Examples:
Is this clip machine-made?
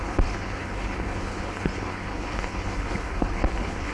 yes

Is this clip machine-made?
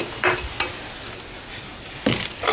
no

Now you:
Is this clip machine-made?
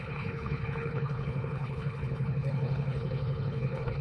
yes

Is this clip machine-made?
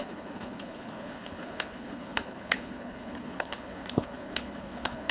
yes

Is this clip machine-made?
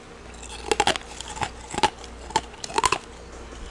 no